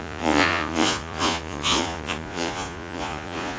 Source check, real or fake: fake